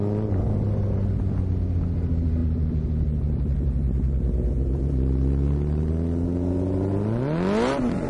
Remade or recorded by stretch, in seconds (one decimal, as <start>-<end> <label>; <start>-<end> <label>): 0.0-8.1 recorded